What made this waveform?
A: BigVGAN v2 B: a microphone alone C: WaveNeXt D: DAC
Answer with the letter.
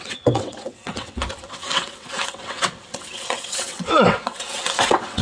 C